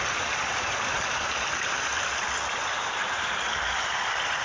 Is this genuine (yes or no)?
yes